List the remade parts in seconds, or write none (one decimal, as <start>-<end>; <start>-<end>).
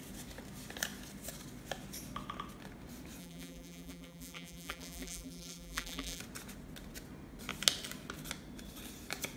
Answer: 3.2-6.2